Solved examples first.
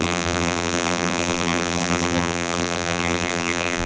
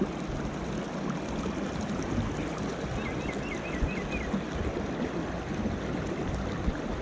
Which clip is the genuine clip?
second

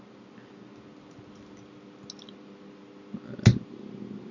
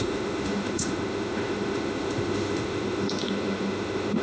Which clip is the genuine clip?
first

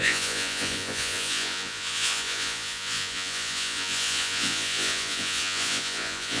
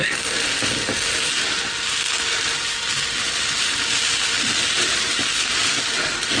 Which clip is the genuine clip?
second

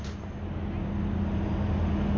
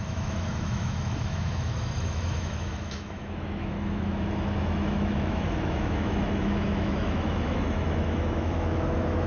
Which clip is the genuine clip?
first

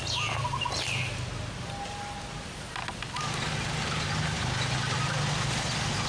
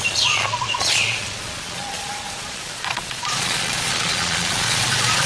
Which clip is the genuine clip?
first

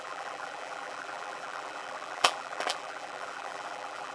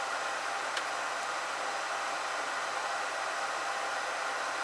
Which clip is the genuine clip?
second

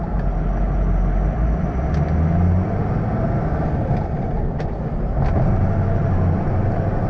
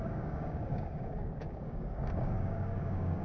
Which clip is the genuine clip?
first